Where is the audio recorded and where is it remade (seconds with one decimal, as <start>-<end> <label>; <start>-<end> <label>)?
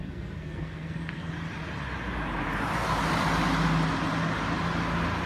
0.0-1.3 remade; 1.3-5.3 recorded